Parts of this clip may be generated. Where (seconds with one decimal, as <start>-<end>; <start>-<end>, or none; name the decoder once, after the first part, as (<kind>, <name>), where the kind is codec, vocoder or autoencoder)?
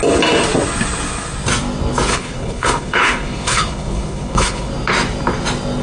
2.1-4.7 (codec, HILCodec)